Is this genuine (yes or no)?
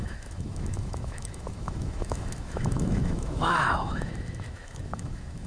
no